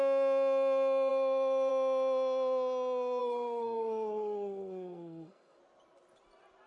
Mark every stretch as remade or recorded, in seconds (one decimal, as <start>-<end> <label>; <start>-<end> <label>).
0.0-3.2 recorded; 3.2-5.6 remade; 5.6-6.7 recorded